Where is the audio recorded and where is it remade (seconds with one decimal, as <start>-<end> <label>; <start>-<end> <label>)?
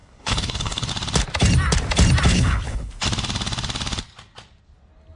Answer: 0.0-0.9 remade; 0.9-2.3 recorded; 2.3-2.9 remade; 2.9-5.2 recorded